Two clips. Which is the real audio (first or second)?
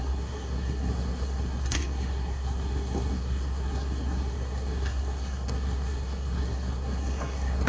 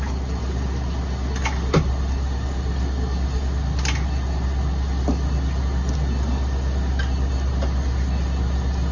second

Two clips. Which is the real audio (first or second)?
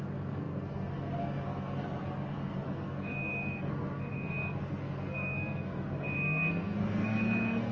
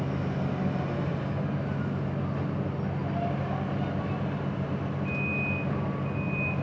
second